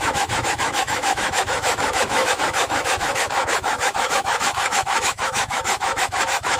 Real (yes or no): no